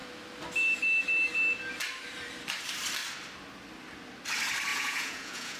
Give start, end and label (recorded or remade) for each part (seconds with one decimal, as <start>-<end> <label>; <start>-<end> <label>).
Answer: 0.0-4.7 recorded; 4.7-5.6 remade